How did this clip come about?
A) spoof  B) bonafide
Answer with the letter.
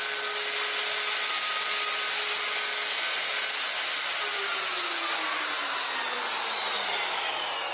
B